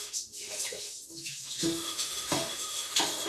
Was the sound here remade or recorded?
remade